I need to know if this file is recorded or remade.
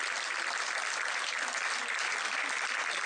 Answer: recorded